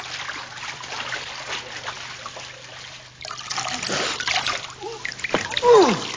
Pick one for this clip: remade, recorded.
recorded